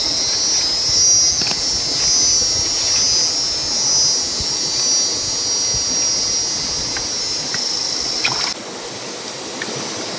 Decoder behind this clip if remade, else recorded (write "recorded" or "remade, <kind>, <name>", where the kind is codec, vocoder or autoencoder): recorded